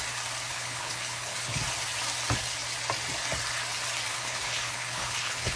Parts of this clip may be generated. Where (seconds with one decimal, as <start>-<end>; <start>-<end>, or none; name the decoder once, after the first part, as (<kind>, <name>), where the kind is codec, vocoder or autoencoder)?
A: 0.5-1.6 (codec, HILCodec); 4.1-5.6